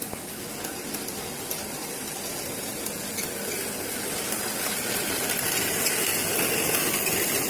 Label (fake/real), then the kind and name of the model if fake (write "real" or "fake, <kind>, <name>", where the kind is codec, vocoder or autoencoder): real